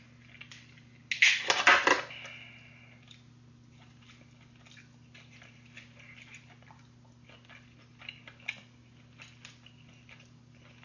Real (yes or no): yes